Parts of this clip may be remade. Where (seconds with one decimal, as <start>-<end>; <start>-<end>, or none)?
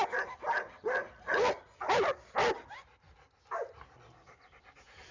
none